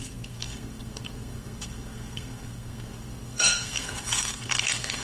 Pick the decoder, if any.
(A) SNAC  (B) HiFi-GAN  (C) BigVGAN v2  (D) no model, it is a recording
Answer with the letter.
A